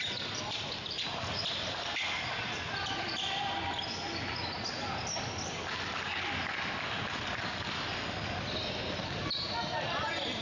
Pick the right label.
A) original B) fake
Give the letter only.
A